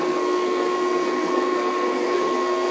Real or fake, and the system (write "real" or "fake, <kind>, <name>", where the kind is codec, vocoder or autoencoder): fake, codec, SNAC